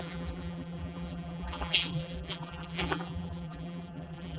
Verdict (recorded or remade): remade